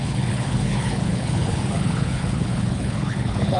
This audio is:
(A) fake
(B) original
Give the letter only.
A